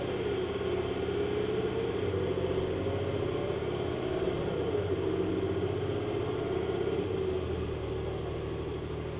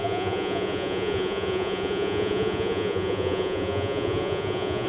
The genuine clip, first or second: first